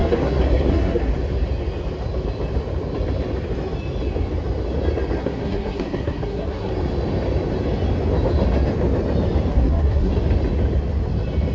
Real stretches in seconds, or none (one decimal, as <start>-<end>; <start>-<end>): 1.1-5.2; 6.7-9.5; 10.1-11.5